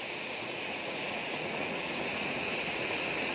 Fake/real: fake